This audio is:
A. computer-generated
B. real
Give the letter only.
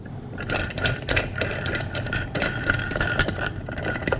A